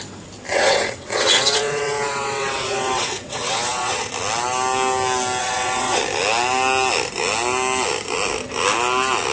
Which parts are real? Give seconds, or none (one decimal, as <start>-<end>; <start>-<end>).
0.0-0.5; 4.1-5.4; 6.0-9.3